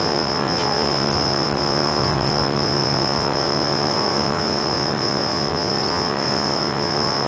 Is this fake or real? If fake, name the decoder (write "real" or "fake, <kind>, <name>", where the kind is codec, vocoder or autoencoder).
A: fake, vocoder, WaveNeXt